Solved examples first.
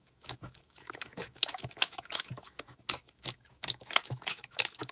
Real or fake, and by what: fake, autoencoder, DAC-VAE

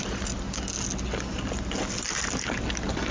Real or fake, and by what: real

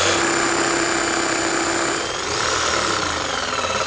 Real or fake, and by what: real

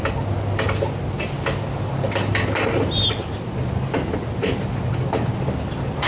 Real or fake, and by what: real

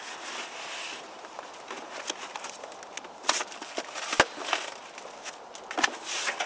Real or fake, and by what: real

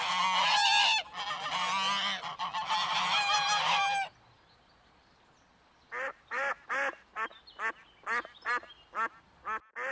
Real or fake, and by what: real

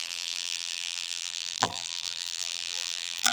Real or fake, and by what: fake, vocoder, BigVGAN v2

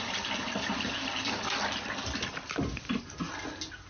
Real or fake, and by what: real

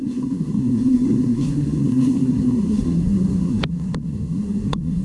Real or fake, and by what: fake, codec, SNAC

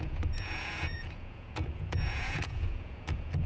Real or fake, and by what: fake, vocoder, Vocos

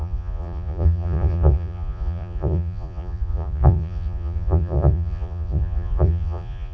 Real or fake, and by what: fake, vocoder, Vocos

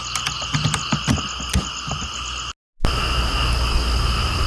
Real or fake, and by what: real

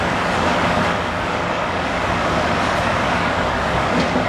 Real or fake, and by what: fake, codec, DAC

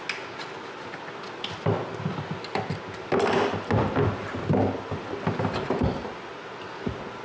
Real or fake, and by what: real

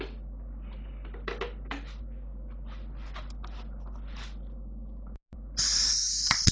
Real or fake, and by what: real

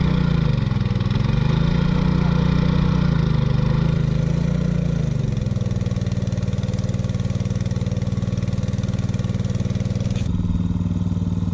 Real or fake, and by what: real